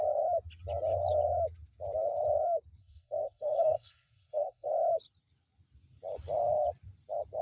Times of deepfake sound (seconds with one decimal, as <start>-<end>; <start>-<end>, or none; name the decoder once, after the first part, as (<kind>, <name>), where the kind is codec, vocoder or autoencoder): 2.8-4.7 (codec, SNAC)